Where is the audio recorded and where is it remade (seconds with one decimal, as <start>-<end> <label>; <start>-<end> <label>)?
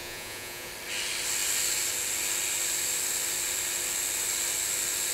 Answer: 0.0-0.7 remade; 0.7-5.1 recorded